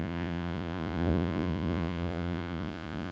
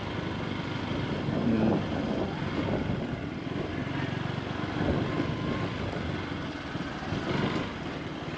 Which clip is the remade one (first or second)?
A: first